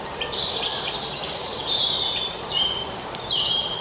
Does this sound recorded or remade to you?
remade